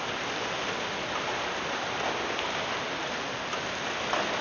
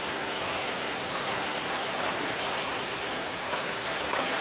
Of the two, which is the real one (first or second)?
first